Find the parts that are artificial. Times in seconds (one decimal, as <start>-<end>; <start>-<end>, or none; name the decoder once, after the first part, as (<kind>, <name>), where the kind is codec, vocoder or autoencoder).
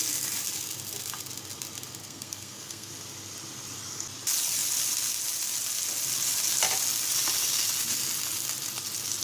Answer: 2.0-2.9 (codec, SNAC)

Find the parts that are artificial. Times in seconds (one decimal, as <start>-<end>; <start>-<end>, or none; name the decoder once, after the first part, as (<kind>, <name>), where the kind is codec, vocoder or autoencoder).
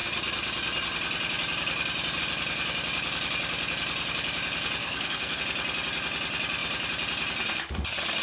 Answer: 4.8-5.4 (codec, SNAC)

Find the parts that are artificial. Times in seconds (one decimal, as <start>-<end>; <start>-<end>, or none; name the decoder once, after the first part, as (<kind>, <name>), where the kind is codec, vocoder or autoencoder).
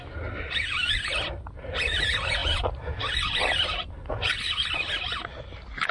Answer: none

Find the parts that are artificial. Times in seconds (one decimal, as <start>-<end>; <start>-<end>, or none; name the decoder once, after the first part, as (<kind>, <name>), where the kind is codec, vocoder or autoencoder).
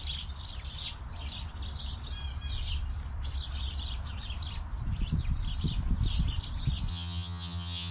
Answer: 6.9-7.9 (vocoder, HiFi-GAN)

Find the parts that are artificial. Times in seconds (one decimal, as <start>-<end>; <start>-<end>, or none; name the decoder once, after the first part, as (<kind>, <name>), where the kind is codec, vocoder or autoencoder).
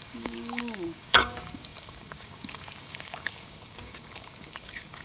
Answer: 0.0-5.0 (codec, DAC)